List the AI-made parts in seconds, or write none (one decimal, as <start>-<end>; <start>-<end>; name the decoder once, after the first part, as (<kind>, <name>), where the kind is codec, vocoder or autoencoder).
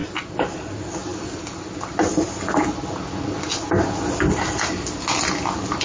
0.0-0.7 (vocoder, BigVGAN v2)